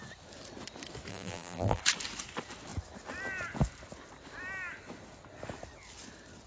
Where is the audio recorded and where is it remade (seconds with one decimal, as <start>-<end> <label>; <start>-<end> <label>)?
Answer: 0.0-1.1 recorded; 1.1-1.8 remade; 1.8-6.5 recorded